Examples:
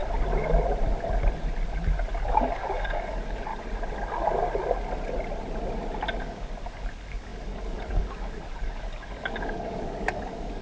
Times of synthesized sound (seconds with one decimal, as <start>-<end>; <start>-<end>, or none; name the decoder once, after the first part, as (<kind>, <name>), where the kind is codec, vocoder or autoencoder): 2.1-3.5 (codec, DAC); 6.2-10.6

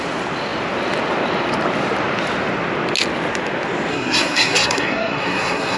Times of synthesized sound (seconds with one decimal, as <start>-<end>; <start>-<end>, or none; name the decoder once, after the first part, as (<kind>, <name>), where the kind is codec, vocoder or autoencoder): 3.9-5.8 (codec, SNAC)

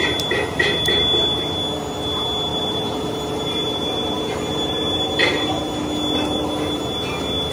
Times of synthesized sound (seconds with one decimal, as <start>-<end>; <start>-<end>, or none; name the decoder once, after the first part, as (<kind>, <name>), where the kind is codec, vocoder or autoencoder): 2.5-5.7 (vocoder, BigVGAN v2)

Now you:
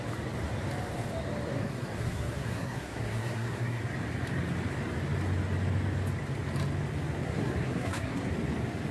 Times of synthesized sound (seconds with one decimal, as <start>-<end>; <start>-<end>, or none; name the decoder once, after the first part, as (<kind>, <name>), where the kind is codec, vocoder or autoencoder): 1.6-3.8 (codec, SNAC); 7.2-8.3

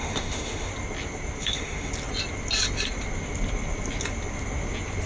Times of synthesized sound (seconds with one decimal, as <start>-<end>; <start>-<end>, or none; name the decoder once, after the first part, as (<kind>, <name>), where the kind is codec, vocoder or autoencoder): 0.0-0.7 (autoencoder, DAC-VAE); 1.4-1.9

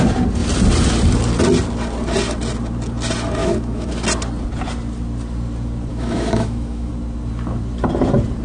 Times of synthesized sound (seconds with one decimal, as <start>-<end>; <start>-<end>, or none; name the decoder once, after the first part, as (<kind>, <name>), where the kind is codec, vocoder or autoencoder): 3.4-3.9 (autoencoder, DAC-VAE); 5.9-6.9

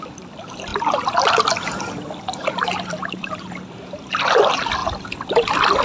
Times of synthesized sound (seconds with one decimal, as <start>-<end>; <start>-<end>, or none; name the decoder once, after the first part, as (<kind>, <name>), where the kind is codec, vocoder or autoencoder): 0.0-5.8 (vocoder, BigVGAN v2)